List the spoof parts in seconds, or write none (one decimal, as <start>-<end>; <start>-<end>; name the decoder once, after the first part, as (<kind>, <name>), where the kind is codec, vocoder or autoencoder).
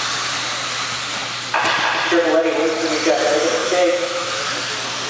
3.6-4.4 (autoencoder, DAC-VAE)